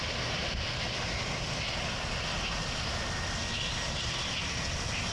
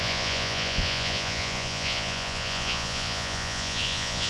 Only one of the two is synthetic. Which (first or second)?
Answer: second